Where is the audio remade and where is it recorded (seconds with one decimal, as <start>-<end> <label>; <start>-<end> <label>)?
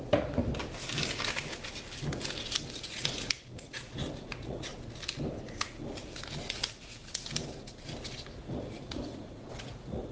0.0-0.4 remade; 0.4-2.8 recorded; 2.8-4.7 remade; 4.7-8.3 recorded; 8.3-10.1 remade